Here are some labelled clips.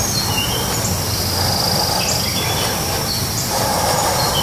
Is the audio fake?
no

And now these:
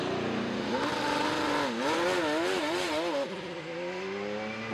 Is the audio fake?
no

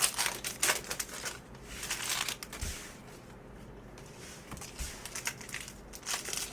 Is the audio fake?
no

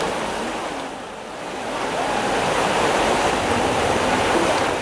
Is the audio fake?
no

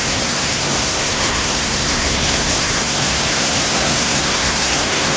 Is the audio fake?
yes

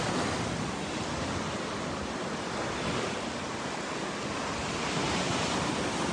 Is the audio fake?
no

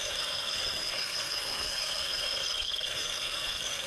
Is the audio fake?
yes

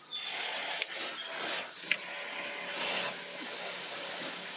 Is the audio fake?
no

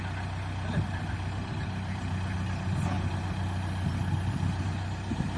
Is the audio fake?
no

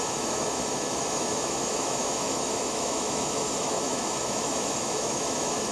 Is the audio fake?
yes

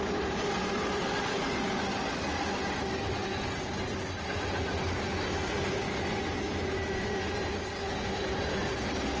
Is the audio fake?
no